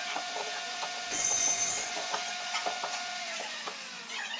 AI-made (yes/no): yes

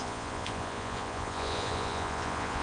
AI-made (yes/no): yes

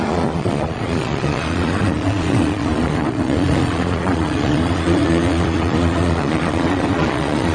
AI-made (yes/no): yes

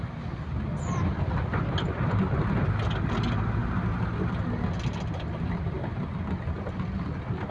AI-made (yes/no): no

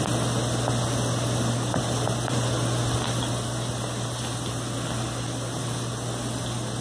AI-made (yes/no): no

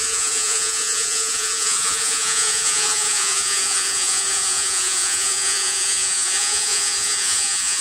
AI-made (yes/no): yes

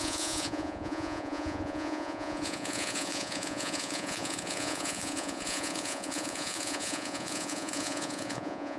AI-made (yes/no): yes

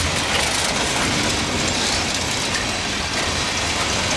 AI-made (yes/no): no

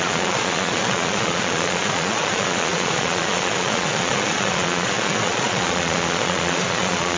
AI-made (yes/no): yes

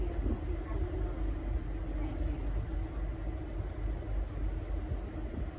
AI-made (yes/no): no